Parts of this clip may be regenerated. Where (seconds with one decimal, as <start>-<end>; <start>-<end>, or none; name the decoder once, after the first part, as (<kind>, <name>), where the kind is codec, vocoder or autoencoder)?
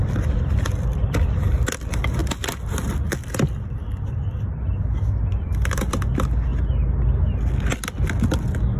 0.0-2.2 (vocoder, BigVGAN v2); 4.3-6.5